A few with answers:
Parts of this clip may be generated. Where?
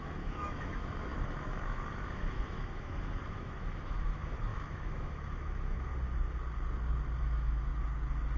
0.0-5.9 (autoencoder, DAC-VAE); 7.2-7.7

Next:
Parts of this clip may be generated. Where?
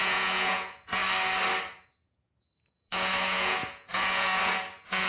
0.0-1.0 (vocoder, Vocos); 1.7-5.1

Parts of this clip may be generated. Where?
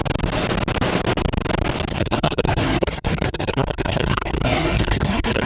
1.9-5.5 (codec, SNAC)